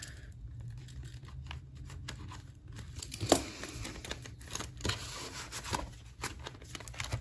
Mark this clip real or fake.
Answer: real